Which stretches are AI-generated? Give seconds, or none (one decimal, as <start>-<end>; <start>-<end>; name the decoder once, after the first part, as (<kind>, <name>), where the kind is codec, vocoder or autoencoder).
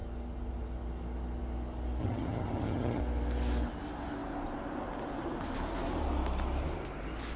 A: 2.0-3.0 (vocoder, HiFi-GAN)